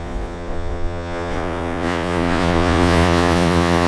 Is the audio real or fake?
fake